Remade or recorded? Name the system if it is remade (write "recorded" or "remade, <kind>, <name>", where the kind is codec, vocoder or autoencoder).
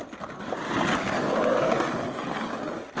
recorded